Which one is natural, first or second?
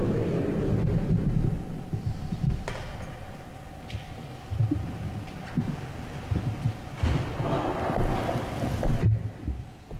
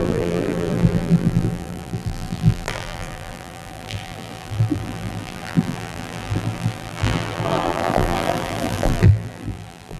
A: first